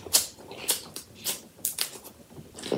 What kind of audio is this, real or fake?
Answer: fake